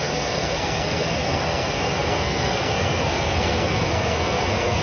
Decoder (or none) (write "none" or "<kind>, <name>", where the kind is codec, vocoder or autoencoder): codec, SNAC